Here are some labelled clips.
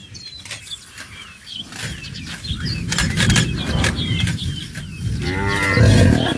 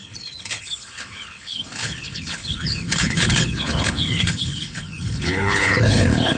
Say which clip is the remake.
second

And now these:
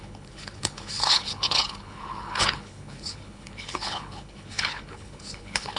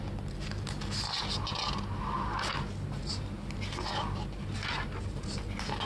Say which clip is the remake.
first